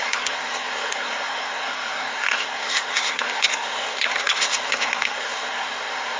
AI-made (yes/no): yes